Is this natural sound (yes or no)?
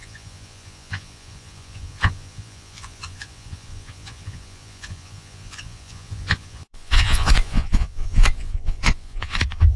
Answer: no